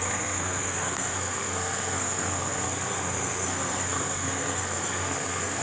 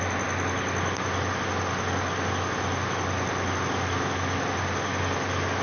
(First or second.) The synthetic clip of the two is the first